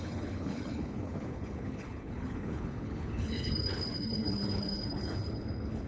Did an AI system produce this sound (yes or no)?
yes